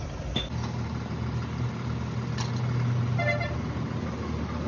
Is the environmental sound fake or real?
real